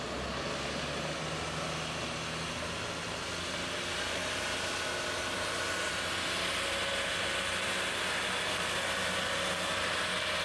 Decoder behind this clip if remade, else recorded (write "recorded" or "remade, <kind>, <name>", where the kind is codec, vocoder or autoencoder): recorded